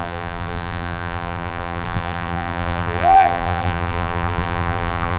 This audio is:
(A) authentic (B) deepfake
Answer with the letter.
B